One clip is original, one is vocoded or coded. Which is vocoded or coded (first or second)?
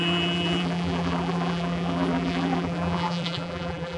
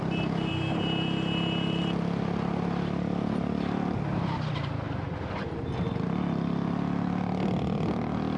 first